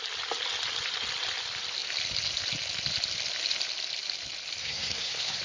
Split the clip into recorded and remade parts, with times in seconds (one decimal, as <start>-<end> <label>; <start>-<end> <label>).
0.0-4.6 recorded; 4.6-5.4 remade